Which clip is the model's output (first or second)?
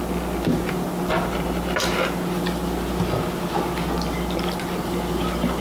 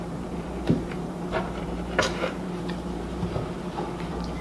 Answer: second